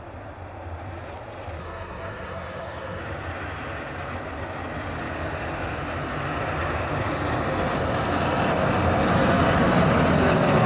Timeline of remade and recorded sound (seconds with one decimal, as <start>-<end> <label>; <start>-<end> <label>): 0.0-1.6 recorded; 1.6-3.0 remade; 3.0-10.7 recorded